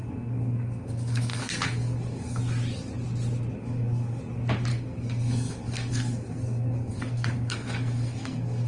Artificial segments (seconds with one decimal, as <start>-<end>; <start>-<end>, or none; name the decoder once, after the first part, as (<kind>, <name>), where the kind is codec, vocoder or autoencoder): 0.0-2.4 (codec, SNAC); 3.6-4.2; 4.7-8.7